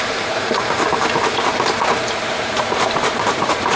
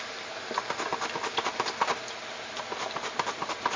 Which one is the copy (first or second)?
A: first